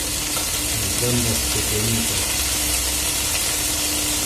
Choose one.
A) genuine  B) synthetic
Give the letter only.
A